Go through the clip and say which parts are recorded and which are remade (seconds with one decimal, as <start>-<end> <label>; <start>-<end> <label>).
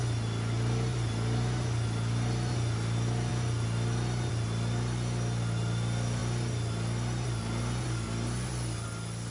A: 0.0-9.3 recorded